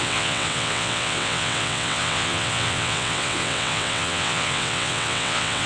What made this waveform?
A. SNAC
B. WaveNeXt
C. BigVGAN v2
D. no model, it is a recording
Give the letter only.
B